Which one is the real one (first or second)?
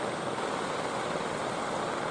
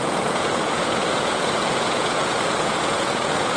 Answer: first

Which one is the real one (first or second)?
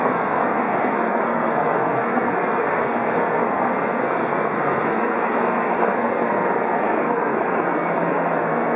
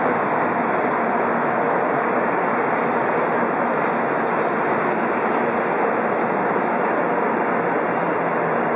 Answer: second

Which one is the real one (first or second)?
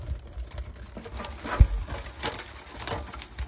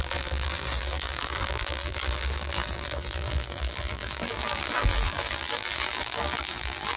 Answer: first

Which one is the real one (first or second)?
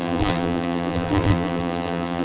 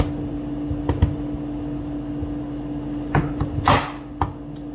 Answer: second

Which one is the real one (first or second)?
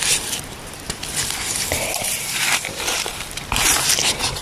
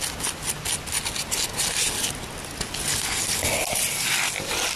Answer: second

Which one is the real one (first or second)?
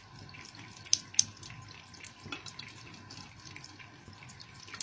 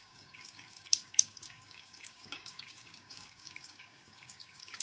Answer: first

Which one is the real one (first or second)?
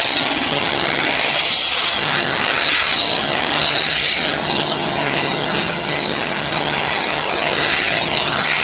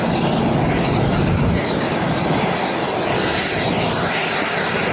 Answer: second